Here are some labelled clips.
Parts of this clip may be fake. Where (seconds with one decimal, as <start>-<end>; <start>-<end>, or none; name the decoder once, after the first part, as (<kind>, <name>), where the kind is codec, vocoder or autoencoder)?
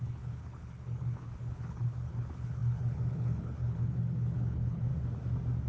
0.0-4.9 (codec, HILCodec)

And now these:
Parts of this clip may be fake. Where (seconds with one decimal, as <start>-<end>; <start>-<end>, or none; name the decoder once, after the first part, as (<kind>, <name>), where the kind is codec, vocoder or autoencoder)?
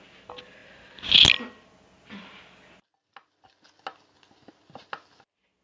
none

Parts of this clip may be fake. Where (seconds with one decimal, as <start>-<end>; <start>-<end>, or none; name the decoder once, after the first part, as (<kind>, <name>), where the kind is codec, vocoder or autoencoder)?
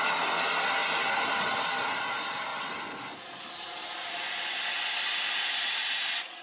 none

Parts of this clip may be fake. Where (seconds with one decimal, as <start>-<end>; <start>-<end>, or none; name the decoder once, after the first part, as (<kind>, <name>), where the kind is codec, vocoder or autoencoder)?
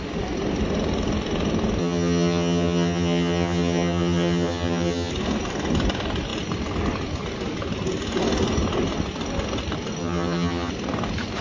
1.8-5.1 (vocoder, HiFi-GAN); 10.0-10.7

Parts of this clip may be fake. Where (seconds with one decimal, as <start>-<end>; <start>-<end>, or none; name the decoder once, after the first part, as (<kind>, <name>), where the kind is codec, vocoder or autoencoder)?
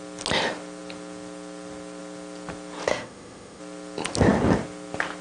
2.9-3.6 (autoencoder, DAC-VAE)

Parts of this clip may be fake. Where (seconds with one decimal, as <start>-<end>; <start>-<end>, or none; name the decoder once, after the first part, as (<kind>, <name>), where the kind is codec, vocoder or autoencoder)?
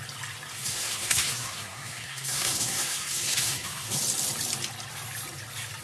0.5-4.0 (codec, SNAC)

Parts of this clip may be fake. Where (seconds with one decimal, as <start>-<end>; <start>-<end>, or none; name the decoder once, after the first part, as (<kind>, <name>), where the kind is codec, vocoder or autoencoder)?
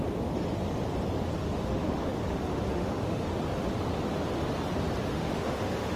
1.4-3.3 (autoencoder, DAC-VAE); 5.1-6.0